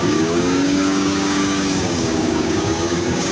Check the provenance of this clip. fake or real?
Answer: fake